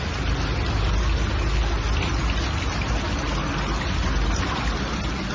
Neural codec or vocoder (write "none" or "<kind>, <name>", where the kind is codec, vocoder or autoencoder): none